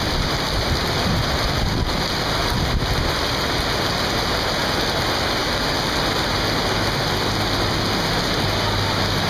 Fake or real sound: real